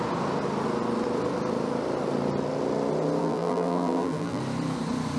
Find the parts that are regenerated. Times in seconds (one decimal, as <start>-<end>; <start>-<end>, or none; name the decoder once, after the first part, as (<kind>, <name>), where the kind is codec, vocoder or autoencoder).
3.2-4.4 (vocoder, BigVGAN v2)